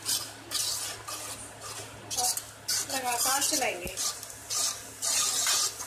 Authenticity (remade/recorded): recorded